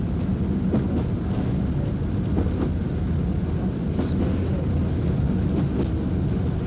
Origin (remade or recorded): recorded